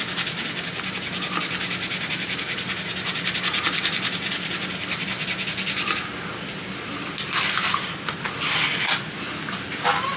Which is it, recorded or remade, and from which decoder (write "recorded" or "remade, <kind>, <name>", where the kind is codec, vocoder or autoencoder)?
recorded